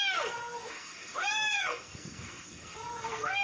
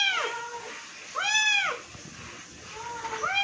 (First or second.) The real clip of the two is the second